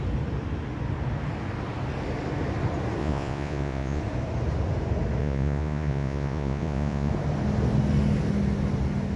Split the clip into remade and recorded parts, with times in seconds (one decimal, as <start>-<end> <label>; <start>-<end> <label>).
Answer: 0.0-3.0 recorded; 3.0-4.0 remade; 4.0-5.2 recorded; 5.2-7.1 remade; 7.1-9.2 recorded